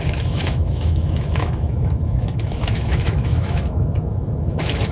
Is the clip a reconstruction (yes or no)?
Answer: yes